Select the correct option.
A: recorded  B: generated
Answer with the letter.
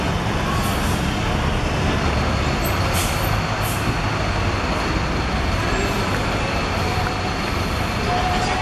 A